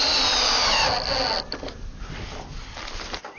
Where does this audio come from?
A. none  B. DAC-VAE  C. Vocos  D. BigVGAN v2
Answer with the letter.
A